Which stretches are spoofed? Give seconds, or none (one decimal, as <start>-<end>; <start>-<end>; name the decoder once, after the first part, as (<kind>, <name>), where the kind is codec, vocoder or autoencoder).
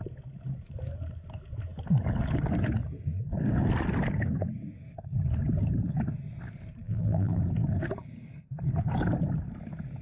6.8-7.4 (vocoder, BigVGAN v2)